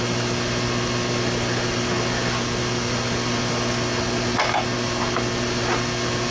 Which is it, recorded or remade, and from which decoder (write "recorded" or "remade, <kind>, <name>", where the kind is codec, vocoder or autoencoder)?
recorded